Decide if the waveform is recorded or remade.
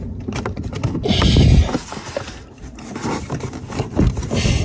recorded